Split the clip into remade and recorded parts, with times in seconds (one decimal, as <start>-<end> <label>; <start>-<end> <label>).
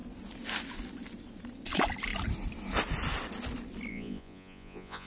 0.0-3.9 recorded; 3.9-5.1 remade